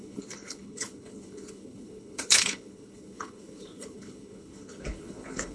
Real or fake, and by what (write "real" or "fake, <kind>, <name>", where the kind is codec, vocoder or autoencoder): fake, codec, HILCodec